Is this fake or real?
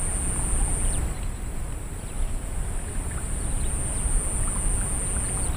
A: real